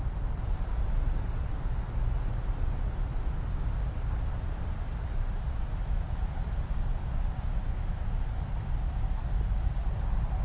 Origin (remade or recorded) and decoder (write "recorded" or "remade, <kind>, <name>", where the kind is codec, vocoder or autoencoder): recorded